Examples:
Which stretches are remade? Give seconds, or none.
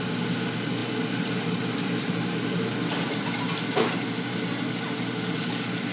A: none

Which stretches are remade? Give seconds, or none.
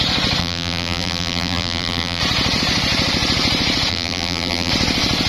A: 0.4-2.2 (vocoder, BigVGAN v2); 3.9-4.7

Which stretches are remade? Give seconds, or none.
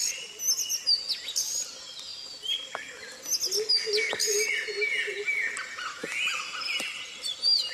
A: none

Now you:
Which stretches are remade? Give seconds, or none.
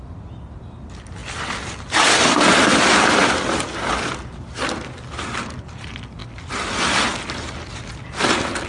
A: 6.2-6.9 (vocoder, BigVGAN v2)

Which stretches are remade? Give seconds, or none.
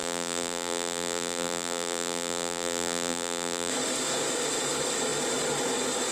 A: 0.0-3.7 (vocoder, BigVGAN v2)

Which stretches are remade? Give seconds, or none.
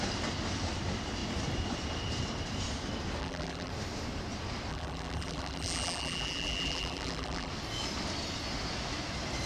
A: 3.2-3.7 (vocoder, BigVGAN v2); 4.7-7.5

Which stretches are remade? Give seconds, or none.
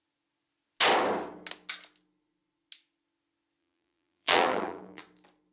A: 3.6-5.0 (vocoder, BigVGAN v2)